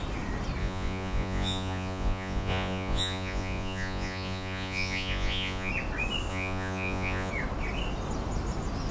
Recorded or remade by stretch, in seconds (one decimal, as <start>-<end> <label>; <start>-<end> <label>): 0.0-0.6 recorded; 0.6-5.7 remade; 5.7-6.3 recorded; 6.3-7.3 remade; 7.3-8.9 recorded